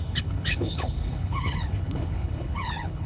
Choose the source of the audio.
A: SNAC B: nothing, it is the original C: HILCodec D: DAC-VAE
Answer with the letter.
C